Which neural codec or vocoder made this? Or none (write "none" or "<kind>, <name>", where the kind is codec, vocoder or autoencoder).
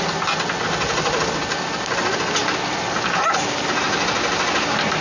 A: none